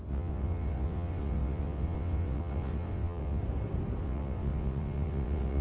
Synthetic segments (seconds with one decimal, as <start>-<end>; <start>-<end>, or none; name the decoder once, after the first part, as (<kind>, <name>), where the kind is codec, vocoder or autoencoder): 0.0-3.4 (vocoder, WaveNeXt); 4.0-5.6